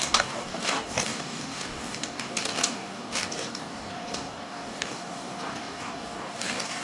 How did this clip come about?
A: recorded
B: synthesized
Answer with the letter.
B